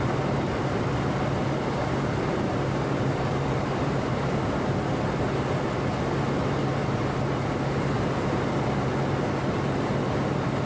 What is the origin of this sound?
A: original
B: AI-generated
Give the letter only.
A